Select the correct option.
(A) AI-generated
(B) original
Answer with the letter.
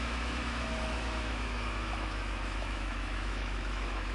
A